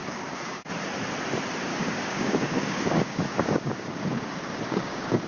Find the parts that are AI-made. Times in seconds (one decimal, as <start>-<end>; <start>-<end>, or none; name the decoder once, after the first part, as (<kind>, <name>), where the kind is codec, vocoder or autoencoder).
0.0-0.7 (codec, DAC); 1.7-5.3